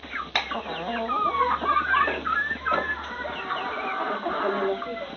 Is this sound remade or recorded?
recorded